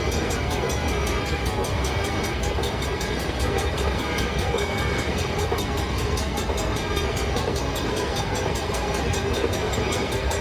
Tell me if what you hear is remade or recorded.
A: remade